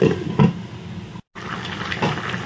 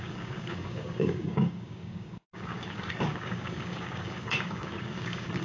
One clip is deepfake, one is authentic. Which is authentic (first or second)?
first